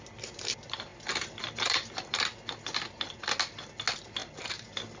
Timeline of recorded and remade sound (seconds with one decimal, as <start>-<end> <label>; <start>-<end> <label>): 0.0-5.0 recorded